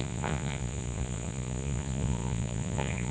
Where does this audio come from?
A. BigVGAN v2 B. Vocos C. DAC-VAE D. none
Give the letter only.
B